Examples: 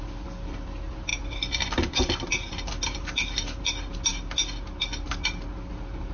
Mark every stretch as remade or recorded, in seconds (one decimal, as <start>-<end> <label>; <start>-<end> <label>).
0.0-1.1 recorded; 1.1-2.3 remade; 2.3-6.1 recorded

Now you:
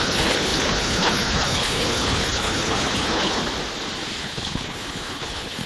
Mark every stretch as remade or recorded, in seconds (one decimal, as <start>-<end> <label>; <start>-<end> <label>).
0.0-3.4 remade; 3.4-4.2 recorded; 4.2-5.7 remade

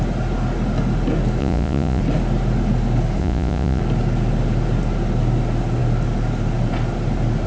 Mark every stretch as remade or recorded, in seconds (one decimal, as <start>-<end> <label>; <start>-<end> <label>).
0.0-1.4 recorded; 1.4-2.0 remade; 2.0-3.2 recorded; 3.2-3.8 remade; 3.8-7.5 recorded

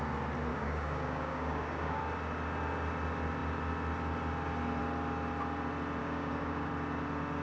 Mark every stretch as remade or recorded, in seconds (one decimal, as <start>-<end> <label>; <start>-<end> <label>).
0.0-0.5 recorded; 0.5-2.0 remade; 2.0-6.0 recorded; 6.0-6.7 remade; 6.7-7.4 recorded